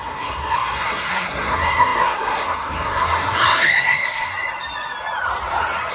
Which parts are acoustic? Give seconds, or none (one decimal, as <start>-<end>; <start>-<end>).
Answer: 4.3-5.9